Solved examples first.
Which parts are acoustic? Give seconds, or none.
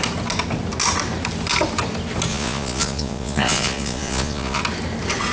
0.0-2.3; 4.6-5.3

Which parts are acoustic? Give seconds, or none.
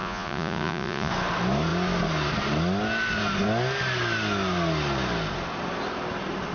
1.1-6.5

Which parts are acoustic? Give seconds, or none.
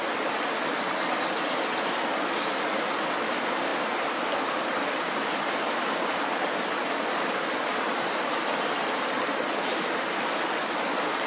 0.0-11.3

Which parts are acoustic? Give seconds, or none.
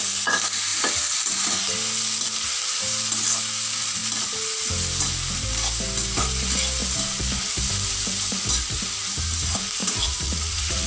0.0-9.8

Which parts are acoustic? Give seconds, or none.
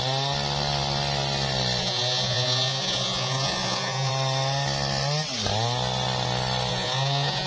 0.0-1.8; 4.1-6.7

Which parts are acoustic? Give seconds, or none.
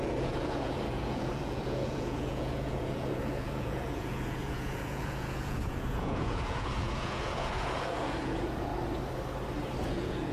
8.7-9.8